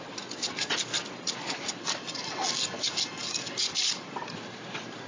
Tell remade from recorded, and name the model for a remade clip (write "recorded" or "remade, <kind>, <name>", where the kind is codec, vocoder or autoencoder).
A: recorded